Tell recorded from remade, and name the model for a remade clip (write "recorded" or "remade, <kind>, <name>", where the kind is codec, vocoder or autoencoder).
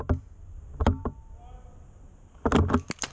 recorded